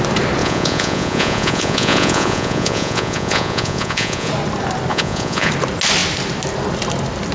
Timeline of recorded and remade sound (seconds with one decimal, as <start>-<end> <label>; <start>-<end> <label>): 0.0-0.4 recorded; 0.4-4.3 remade; 4.3-4.9 recorded; 4.9-5.5 remade; 5.5-7.3 recorded